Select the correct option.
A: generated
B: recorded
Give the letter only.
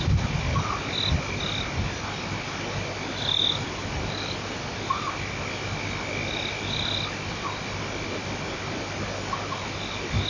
B